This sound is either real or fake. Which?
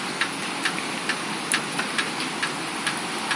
real